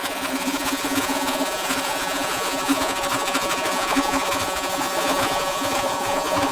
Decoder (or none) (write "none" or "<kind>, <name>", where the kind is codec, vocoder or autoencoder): vocoder, Vocos